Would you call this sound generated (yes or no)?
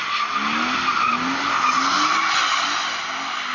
no